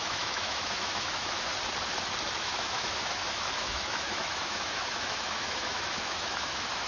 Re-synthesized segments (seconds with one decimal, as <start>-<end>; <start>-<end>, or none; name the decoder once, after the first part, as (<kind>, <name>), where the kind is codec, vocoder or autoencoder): 0.0-1.5 (autoencoder, DAC-VAE); 2.4-6.9